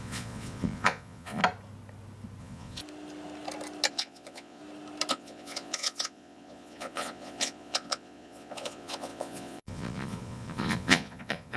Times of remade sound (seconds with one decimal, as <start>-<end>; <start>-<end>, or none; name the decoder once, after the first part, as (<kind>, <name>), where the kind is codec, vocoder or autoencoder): 0.0-1.4 (vocoder, Vocos); 2.4-2.8; 3.9-4.6; 5.1-11.6